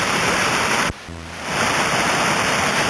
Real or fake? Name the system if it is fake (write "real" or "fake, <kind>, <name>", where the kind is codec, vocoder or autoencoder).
fake, vocoder, BigVGAN v2